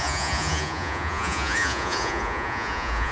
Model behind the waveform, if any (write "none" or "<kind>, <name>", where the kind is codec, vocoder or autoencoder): vocoder, Vocos